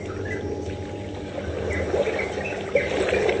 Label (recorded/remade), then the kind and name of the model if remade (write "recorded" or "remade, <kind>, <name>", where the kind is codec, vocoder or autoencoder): recorded